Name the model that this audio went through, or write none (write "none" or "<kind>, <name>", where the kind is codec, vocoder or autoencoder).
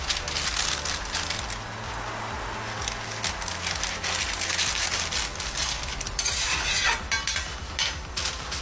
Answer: none